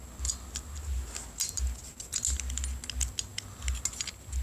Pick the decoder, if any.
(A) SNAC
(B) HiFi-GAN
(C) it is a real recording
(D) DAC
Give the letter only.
C